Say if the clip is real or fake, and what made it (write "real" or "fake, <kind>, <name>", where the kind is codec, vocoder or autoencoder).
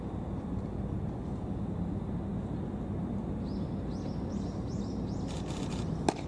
real